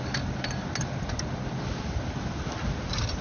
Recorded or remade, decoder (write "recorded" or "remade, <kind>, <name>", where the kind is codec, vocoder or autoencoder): recorded